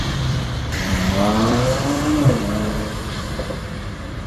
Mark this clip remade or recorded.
remade